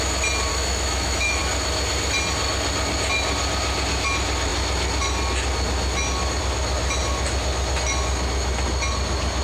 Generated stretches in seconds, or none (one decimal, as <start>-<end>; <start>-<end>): 0.5-1.4